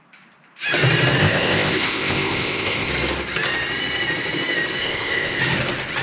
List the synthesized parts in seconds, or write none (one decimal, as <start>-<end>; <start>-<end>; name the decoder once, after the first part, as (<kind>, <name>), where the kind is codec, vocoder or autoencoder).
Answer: 1.2-2.9 (codec, ZipCodec); 4.8-5.4